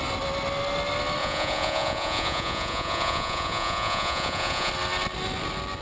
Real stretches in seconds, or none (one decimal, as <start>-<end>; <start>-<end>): 0.0-1.2; 4.7-5.8